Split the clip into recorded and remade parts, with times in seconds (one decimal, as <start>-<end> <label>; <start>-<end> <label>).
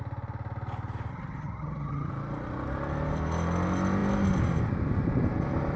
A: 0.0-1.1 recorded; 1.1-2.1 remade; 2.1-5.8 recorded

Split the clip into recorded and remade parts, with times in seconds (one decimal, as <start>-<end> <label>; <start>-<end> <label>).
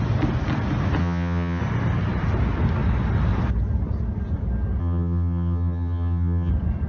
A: 0.0-1.0 recorded; 1.0-1.6 remade; 1.6-4.8 recorded; 4.8-6.5 remade; 6.5-6.9 recorded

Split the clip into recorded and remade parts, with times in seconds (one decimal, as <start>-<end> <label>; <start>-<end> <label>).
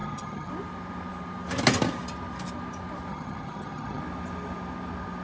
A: 0.0-0.5 remade; 0.5-3.1 recorded; 3.1-4.0 remade; 4.0-5.2 recorded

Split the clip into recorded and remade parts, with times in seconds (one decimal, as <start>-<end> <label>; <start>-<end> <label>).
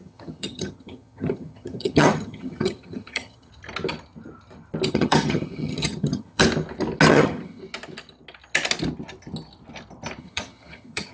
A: 0.0-3.5 remade; 3.5-4.9 recorded; 4.9-6.4 remade; 6.4-7.1 recorded; 7.1-7.6 remade; 7.6-10.2 recorded; 10.2-11.1 remade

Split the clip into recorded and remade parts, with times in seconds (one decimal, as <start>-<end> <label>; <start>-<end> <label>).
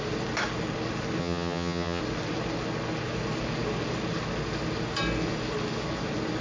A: 0.0-1.2 recorded; 1.2-2.0 remade; 2.0-6.4 recorded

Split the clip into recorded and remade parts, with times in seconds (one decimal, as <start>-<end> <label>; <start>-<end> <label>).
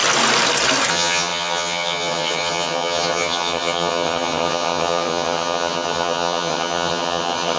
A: 0.0-0.9 recorded; 0.9-7.6 remade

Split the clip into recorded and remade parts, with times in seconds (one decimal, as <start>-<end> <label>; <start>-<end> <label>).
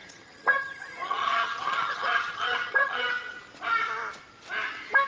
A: 0.0-3.1 remade; 3.1-5.1 recorded